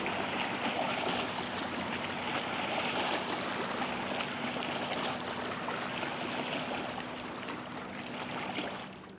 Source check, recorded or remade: recorded